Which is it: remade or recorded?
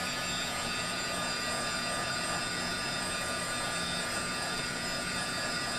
remade